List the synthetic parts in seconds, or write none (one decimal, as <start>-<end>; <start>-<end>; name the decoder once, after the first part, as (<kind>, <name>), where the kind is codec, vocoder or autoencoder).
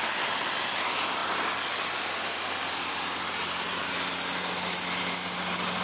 none